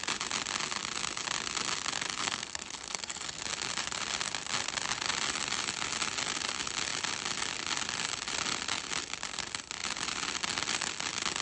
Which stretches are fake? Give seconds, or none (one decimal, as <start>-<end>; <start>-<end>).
2.2-3.4